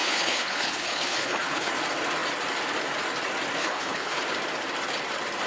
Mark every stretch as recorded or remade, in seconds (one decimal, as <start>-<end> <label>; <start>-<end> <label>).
0.0-1.7 remade; 1.7-3.6 recorded; 3.6-4.2 remade; 4.2-5.5 recorded